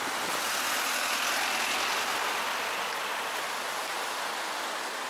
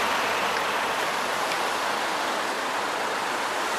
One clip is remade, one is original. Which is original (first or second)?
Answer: first